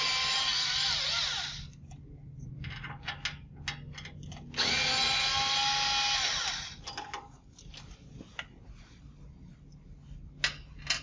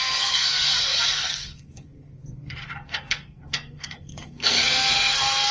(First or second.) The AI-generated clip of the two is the second